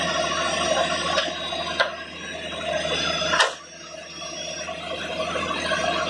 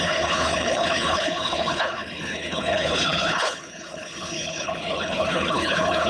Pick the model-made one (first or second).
second